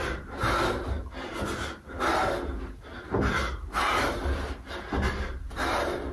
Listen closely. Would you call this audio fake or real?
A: real